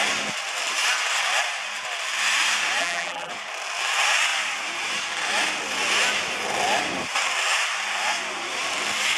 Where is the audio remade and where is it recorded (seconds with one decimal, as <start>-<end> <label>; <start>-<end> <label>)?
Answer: 0.0-2.8 recorded; 2.8-3.3 remade; 3.3-9.2 recorded

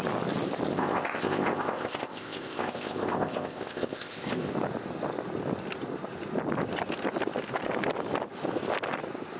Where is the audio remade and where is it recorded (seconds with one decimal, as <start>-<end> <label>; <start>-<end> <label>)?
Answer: 0.0-0.7 recorded; 0.7-4.5 remade; 4.5-9.4 recorded